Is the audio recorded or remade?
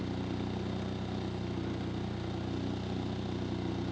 recorded